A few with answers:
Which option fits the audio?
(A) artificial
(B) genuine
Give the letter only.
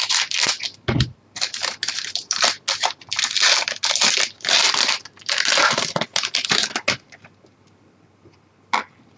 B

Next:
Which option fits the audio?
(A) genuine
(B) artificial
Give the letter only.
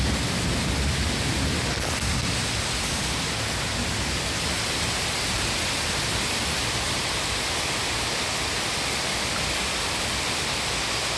A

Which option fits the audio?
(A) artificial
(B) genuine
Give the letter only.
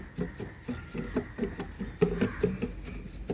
B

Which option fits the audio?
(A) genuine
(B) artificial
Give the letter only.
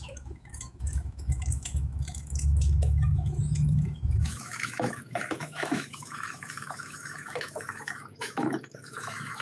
B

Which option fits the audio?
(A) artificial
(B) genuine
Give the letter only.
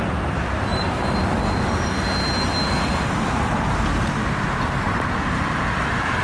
B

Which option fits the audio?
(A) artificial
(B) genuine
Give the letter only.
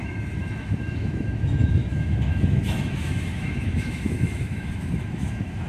A